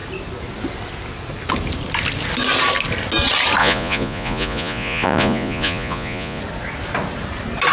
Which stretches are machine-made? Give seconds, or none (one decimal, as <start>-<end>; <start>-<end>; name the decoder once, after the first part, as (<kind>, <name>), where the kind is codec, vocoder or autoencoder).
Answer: 3.6-6.4 (vocoder, Vocos)